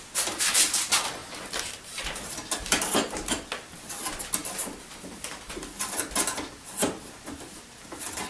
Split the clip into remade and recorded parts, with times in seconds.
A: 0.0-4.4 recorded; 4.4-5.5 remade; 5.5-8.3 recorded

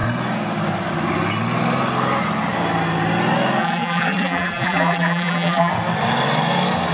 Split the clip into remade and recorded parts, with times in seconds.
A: 0.0-3.6 recorded; 3.6-5.7 remade; 5.7-6.9 recorded

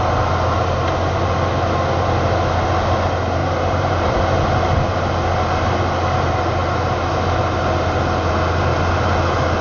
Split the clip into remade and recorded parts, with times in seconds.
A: 0.0-3.4 recorded; 3.4-4.1 remade; 4.1-9.6 recorded